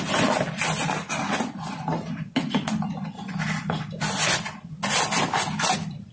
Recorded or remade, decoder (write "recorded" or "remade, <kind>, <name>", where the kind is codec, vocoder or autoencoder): recorded